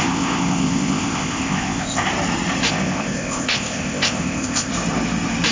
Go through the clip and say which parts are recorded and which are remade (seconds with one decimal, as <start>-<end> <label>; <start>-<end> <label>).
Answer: 0.0-2.1 remade; 2.1-2.7 recorded; 2.7-4.7 remade; 4.7-5.5 recorded